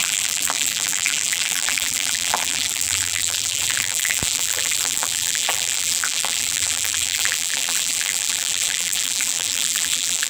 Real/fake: fake